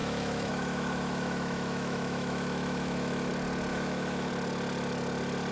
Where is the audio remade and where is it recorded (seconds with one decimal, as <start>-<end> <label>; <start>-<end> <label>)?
0.0-3.3 remade; 3.3-3.7 recorded; 3.7-4.3 remade; 4.3-5.5 recorded